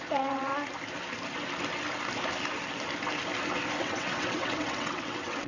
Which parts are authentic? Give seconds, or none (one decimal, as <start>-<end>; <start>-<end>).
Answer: 0.5-3.8